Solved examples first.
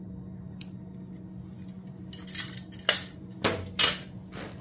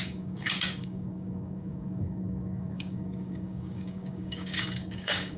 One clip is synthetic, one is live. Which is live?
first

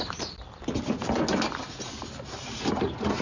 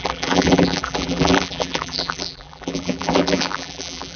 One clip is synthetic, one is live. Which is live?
first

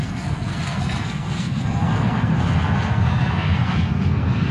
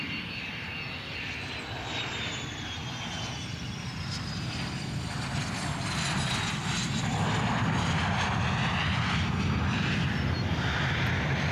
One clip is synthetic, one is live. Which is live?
second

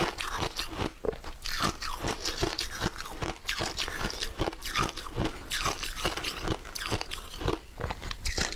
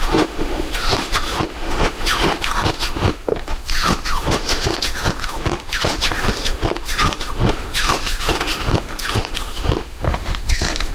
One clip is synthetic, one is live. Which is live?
first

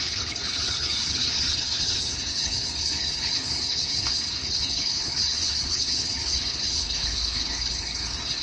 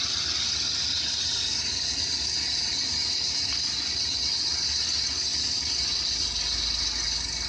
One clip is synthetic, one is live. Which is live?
second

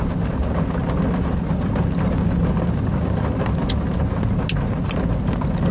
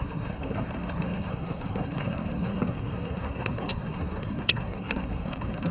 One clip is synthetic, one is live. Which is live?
first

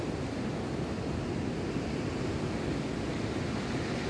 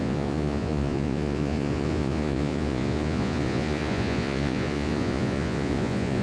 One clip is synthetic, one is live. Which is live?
first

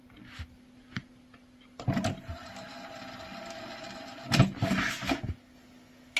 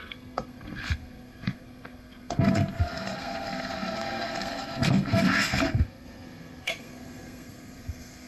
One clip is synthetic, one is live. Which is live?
first